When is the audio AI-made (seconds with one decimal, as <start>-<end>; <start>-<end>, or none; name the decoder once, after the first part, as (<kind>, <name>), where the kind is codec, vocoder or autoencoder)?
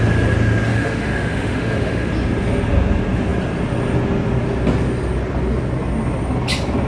0.7-2.1 (autoencoder, DAC-VAE)